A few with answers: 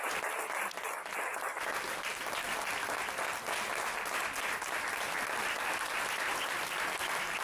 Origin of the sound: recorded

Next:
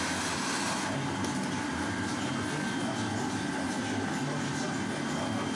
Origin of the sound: recorded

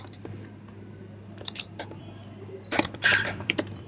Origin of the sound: remade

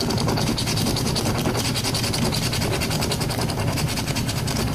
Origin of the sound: recorded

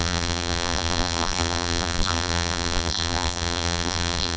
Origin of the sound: remade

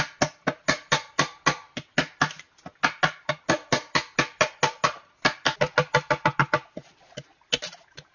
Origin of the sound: recorded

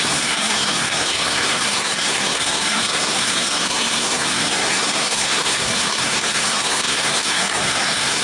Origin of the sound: remade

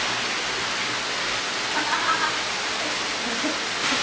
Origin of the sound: recorded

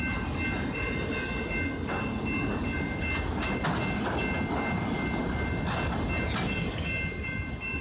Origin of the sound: recorded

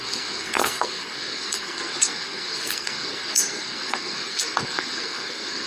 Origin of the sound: remade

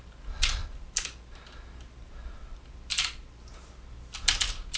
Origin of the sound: recorded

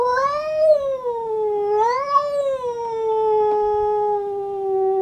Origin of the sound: recorded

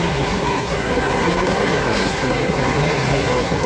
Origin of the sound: remade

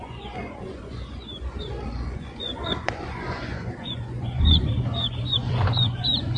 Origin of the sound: remade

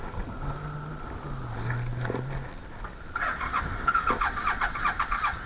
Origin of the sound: recorded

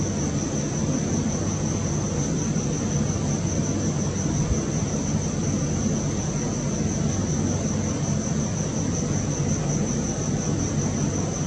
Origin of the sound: recorded